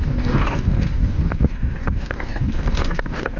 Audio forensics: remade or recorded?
remade